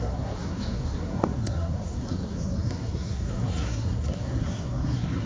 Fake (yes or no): yes